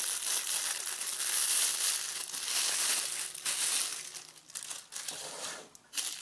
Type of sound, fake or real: real